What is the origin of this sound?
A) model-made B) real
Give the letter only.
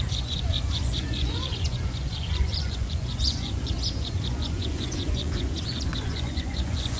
A